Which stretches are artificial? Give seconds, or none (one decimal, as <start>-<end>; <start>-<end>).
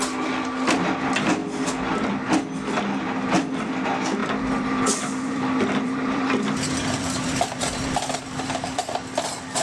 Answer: 4.2-8.8